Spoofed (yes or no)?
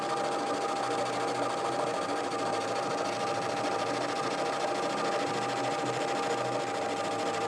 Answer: no